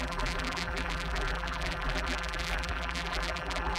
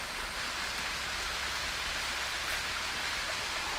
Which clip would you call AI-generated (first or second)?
first